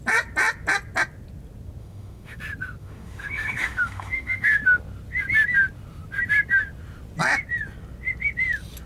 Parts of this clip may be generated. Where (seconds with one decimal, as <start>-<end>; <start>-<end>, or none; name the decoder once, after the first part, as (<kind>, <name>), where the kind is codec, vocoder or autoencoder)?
1.8-2.4 (autoencoder, DAC-VAE); 2.8-4.6